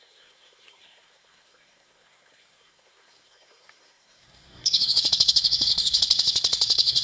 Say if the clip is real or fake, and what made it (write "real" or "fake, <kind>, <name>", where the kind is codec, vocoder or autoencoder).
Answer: fake, codec, SNAC